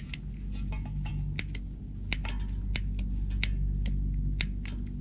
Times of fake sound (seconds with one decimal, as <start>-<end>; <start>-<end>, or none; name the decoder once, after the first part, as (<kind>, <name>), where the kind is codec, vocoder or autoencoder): none